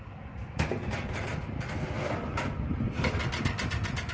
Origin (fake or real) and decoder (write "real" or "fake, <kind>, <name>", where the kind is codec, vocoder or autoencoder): real